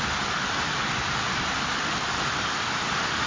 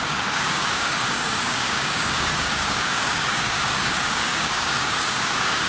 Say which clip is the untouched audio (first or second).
first